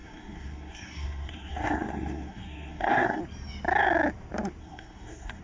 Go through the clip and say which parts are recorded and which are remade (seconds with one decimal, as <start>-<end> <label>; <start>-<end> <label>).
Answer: 0.0-3.2 remade; 3.2-4.6 recorded; 4.6-5.4 remade